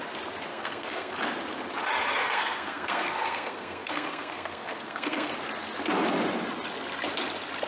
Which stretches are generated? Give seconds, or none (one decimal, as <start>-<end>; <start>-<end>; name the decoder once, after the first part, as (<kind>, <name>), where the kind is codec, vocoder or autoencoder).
0.5-1.1 (codec, SNAC); 2.2-5.3